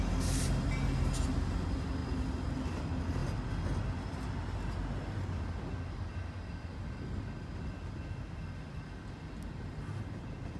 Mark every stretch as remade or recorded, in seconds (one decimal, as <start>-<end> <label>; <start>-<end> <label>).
0.0-10.6 recorded